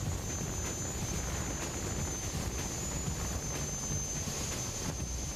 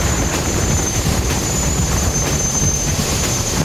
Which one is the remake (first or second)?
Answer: second